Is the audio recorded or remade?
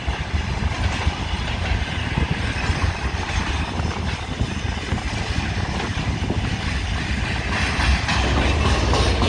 recorded